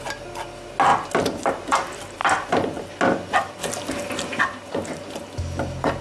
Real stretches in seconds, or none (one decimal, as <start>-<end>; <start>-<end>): 0.0-0.9; 1.5-3.6; 4.4-6.0